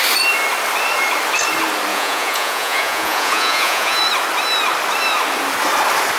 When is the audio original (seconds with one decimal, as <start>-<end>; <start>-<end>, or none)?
0.0-1.9; 4.0-6.2